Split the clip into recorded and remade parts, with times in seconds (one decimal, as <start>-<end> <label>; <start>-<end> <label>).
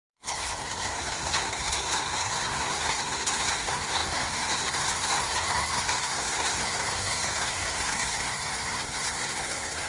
0.0-9.9 remade